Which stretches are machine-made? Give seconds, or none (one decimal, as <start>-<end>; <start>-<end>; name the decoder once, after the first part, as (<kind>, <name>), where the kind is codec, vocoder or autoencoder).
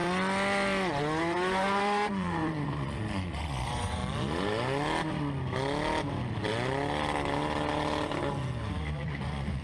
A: 1.2-4.0 (vocoder, Vocos); 8.8-9.6